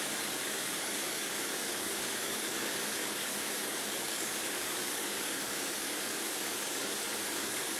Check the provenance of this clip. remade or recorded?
remade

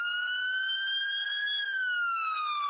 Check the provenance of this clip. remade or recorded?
recorded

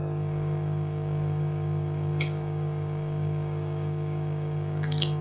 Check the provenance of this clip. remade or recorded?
remade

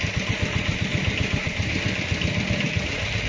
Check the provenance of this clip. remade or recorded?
recorded